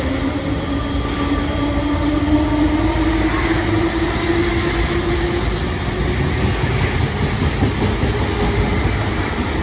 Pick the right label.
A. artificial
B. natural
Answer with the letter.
B